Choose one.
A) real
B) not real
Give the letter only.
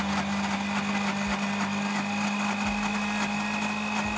A